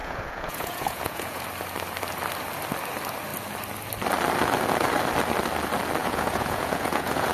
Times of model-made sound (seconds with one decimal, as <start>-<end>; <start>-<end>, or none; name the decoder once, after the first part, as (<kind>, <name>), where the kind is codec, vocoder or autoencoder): 0.0-1.4 (vocoder, Vocos); 6.0-7.3